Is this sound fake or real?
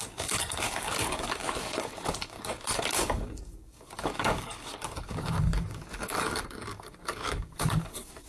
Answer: fake